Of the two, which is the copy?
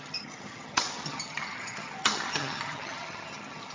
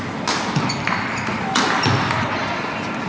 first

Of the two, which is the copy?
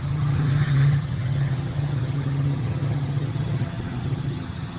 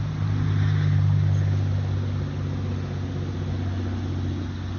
first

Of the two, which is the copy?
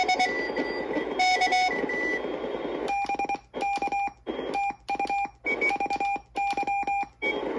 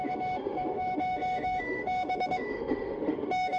second